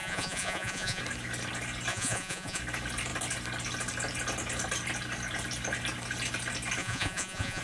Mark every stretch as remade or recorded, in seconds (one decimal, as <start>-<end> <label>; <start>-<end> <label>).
0.0-1.0 remade; 1.0-1.9 recorded; 1.9-2.6 remade; 2.6-6.8 recorded; 6.8-7.6 remade